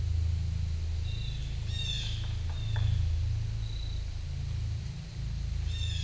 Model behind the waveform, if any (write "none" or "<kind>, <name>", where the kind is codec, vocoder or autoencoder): none